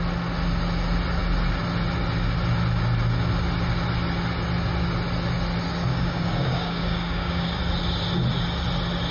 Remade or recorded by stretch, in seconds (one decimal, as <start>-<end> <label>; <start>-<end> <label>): 0.0-5.9 recorded; 5.9-7.6 remade; 7.6-9.1 recorded